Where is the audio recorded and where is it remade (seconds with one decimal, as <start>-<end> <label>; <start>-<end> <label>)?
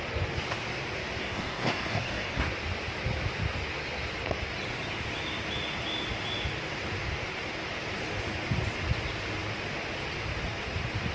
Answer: 0.0-1.2 recorded; 1.2-2.4 remade; 2.4-11.1 recorded